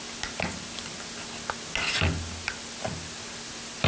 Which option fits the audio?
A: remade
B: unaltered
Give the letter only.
B